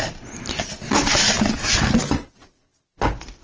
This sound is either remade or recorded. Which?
recorded